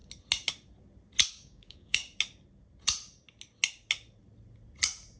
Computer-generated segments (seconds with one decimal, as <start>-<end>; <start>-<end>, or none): 1.3-2.0